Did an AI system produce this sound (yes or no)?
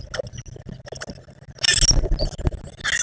no